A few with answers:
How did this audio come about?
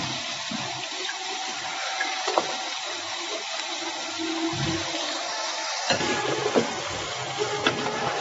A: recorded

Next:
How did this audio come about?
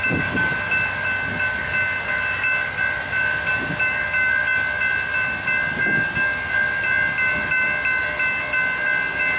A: recorded